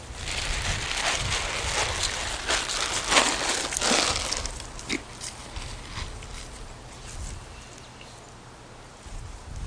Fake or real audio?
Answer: real